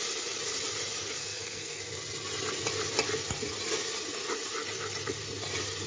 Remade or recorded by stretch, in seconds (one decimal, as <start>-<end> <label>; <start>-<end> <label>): 0.0-1.2 recorded; 1.2-1.8 remade; 1.8-5.9 recorded